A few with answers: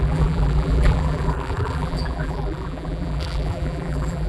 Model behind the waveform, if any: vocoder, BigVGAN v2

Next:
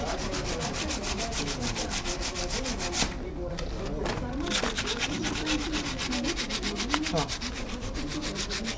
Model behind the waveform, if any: none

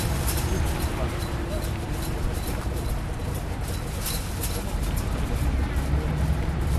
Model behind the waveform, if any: none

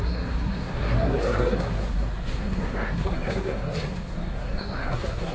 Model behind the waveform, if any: codec, SNAC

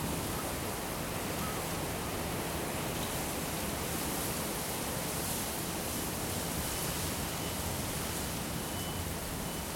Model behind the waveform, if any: none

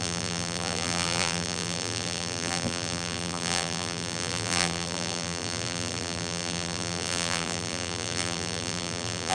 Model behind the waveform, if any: vocoder, BigVGAN v2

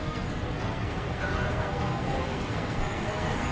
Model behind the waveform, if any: codec, SNAC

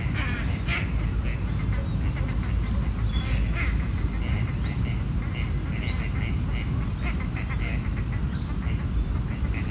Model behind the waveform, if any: none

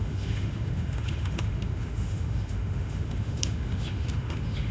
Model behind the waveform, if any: autoencoder, DAC-VAE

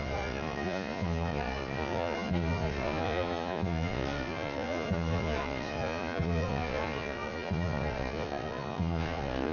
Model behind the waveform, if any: vocoder, Vocos